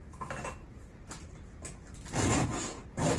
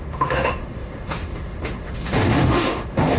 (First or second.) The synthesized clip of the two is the second